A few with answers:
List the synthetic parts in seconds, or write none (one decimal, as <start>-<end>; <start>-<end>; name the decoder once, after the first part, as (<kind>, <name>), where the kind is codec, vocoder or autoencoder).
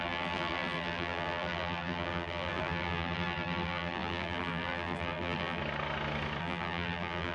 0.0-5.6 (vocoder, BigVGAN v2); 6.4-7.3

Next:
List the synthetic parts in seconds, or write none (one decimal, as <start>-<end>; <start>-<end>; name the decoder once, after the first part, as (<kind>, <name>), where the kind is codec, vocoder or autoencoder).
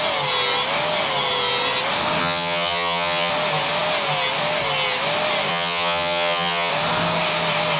2.2-3.3 (vocoder, HiFi-GAN); 5.5-6.7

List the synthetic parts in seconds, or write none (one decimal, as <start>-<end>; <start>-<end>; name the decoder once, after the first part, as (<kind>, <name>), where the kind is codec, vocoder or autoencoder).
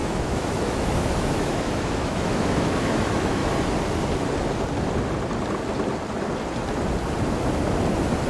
0.0-3.4 (autoencoder, DAC-VAE)